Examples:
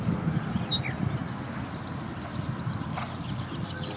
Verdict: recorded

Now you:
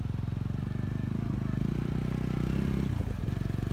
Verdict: recorded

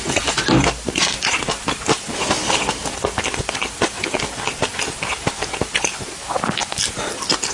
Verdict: recorded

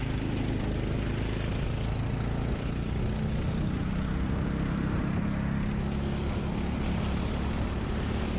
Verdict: recorded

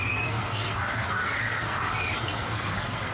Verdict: remade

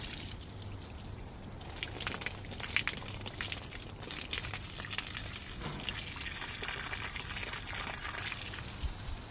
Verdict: recorded